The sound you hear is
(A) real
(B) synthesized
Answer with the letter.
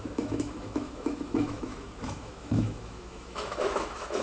B